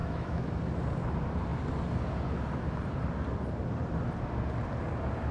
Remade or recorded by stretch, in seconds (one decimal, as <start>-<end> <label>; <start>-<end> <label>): 0.0-0.5 remade; 0.5-5.3 recorded

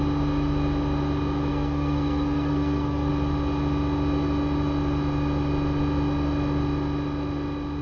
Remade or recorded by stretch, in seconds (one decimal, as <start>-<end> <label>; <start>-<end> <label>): 0.0-1.5 recorded; 1.5-3.1 remade; 3.1-7.8 recorded

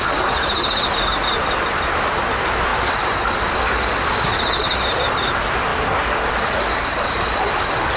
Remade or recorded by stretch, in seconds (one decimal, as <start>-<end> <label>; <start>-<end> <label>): 0.0-8.0 recorded